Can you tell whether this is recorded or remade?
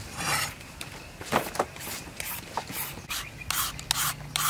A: recorded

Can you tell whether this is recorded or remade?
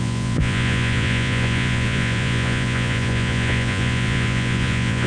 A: remade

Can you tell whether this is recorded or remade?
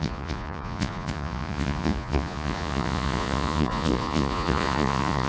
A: remade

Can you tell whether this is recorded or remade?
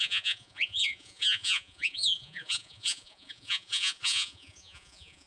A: remade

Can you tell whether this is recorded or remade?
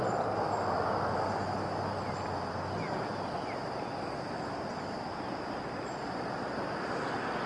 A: recorded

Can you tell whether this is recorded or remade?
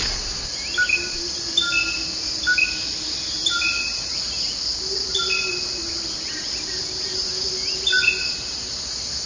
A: recorded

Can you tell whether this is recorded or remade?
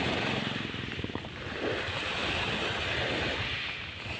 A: recorded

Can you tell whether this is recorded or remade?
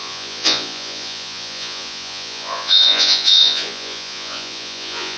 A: remade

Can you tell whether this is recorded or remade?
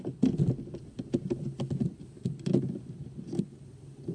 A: recorded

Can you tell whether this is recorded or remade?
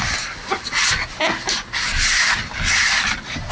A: recorded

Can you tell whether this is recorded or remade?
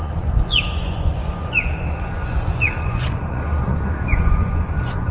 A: remade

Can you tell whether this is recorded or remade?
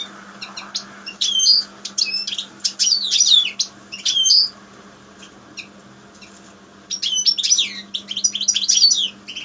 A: recorded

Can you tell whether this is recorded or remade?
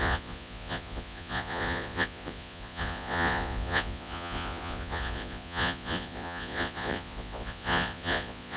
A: remade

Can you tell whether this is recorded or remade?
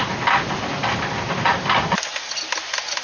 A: recorded